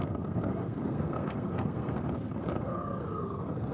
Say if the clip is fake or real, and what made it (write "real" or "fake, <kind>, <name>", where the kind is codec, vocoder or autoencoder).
fake, codec, SNAC